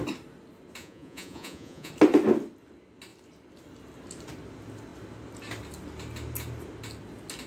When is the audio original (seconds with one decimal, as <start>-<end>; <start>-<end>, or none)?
0.0-0.8; 1.9-7.5